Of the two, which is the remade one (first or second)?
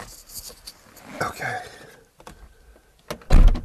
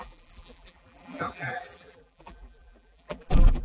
second